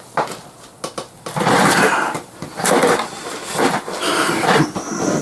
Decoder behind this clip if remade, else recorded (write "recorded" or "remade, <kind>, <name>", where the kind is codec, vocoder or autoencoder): recorded